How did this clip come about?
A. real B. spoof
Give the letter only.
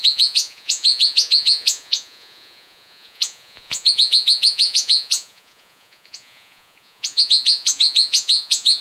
B